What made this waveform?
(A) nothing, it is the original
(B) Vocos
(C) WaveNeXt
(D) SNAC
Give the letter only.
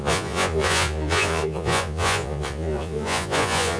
B